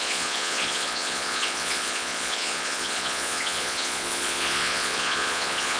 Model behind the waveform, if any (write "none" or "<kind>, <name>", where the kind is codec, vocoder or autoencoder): vocoder, Vocos